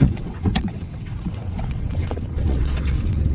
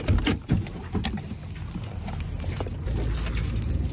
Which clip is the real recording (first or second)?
second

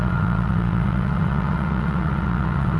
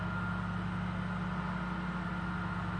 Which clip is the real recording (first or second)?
second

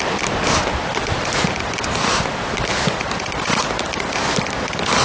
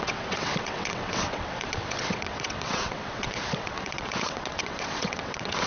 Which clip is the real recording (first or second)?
first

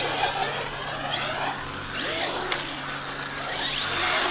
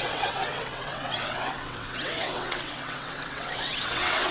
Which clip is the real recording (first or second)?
first